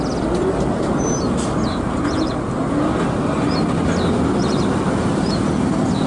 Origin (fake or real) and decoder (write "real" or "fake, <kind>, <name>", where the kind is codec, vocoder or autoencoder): real